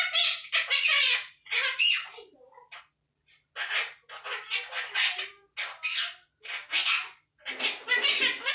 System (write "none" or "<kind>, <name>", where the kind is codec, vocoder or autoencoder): none